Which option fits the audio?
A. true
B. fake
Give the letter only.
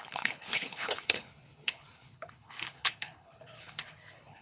B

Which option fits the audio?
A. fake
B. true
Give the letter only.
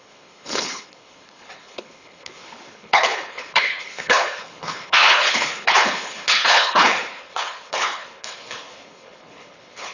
A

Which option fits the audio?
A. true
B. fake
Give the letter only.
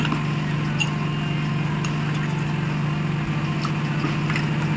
A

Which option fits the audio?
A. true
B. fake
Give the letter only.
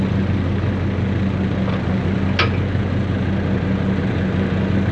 A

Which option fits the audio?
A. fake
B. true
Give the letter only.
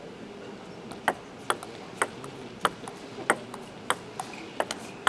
B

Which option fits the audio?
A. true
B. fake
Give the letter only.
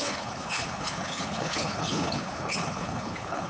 B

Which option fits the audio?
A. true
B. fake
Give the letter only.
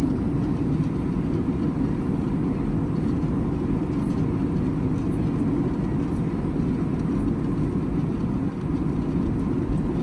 A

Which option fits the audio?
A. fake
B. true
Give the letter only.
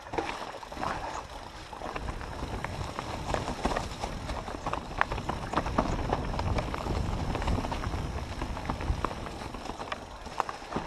B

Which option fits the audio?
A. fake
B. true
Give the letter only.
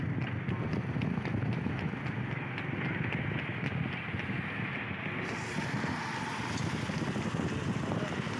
B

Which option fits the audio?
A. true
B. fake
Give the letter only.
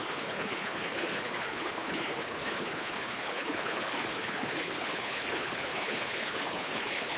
B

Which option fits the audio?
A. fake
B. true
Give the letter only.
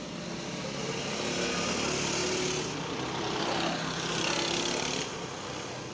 B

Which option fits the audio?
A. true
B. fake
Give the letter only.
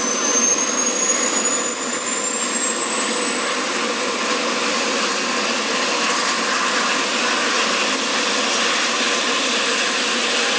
A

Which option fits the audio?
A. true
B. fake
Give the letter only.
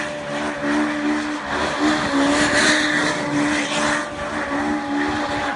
A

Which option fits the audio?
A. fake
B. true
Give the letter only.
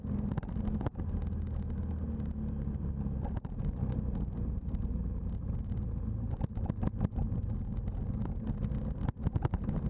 B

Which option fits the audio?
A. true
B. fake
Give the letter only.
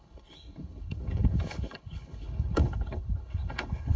B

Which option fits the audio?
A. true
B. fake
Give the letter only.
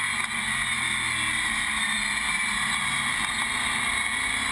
A